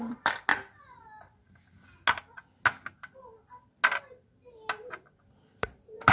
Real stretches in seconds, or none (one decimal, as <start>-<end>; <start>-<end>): 0.0-6.1